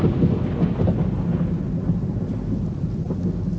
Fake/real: real